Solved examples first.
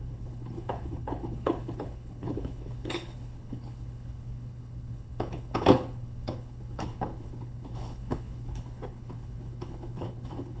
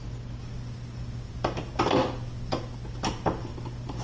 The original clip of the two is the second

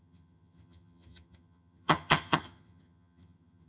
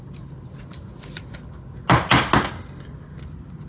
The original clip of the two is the second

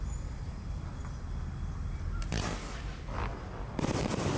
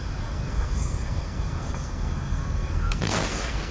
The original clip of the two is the first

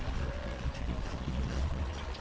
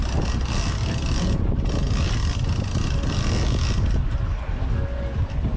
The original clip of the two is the second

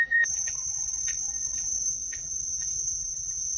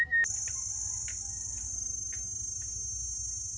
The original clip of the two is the second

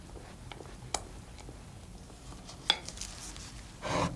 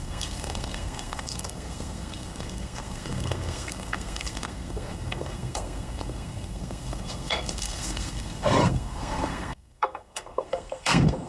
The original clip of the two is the first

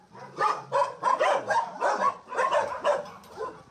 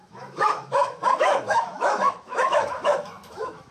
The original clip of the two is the first